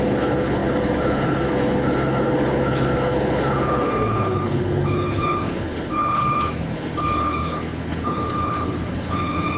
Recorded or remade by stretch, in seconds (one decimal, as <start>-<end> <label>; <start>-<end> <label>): 0.0-9.6 remade